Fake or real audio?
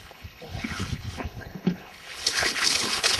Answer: fake